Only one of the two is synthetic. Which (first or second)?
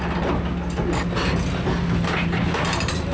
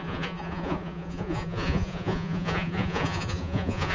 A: second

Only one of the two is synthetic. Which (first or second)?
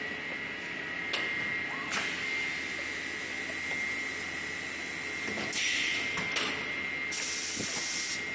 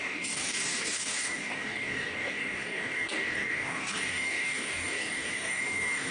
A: second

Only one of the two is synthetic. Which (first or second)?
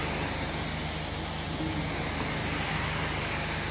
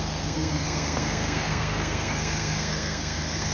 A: second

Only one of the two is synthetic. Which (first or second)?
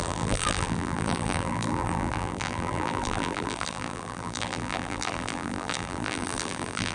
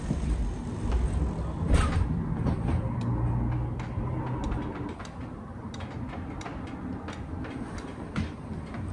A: first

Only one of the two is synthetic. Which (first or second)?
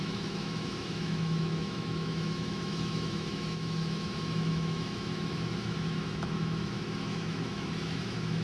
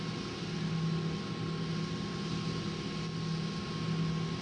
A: first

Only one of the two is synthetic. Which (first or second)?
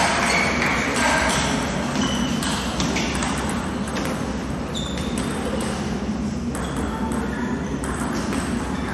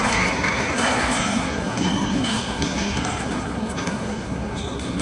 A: second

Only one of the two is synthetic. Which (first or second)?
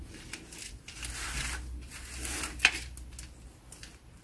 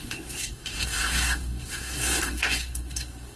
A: second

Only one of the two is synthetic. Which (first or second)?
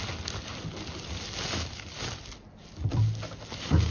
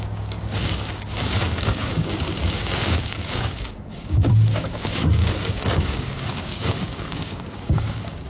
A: second